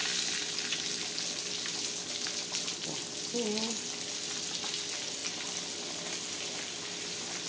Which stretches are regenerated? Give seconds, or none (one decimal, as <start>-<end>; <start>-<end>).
none